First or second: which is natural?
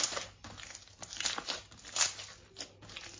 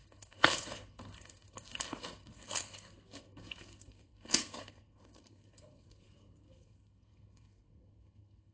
first